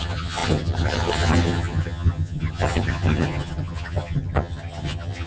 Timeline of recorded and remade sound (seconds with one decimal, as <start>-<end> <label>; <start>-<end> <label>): 0.0-5.3 remade